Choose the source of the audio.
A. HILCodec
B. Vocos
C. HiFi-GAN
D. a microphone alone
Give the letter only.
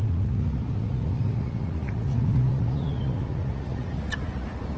B